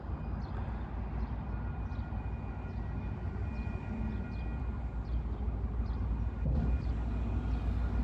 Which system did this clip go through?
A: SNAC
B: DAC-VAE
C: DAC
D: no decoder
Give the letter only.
D